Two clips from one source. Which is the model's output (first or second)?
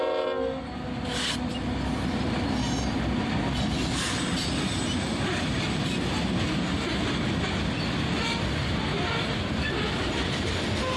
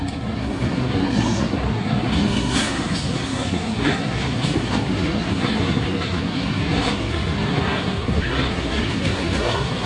second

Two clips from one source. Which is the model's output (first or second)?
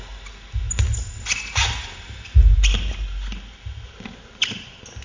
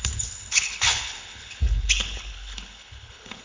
second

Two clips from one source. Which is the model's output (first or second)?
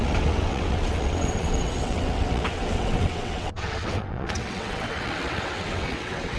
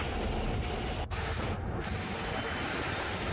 first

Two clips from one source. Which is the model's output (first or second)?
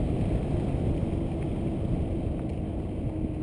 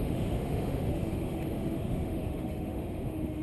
second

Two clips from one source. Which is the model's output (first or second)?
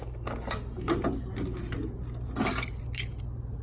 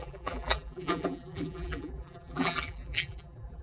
second